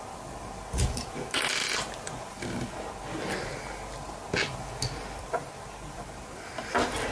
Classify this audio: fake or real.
real